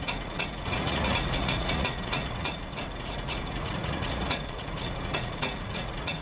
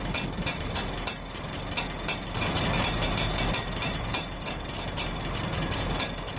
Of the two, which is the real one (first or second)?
second